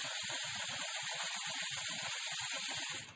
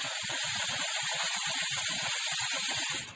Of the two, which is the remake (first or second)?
second